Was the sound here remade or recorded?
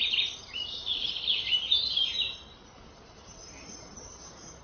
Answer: recorded